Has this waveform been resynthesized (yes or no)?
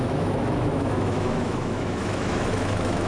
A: yes